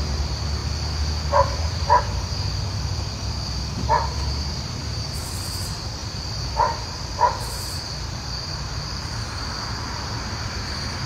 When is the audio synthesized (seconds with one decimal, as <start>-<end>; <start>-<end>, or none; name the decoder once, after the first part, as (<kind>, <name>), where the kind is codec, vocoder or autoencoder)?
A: none